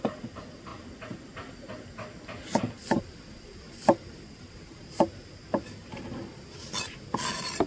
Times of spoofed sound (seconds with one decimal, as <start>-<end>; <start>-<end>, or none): none